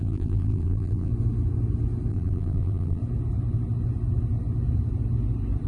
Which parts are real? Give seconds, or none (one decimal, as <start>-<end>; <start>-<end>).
1.1-2.1; 3.0-5.7